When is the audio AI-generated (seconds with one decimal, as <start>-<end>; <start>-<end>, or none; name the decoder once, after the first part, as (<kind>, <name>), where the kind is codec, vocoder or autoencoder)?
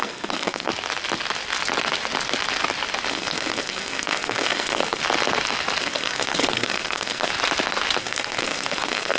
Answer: 0.0-0.7 (codec, SNAC); 3.1-5.0; 5.8-7.3; 8.0-9.2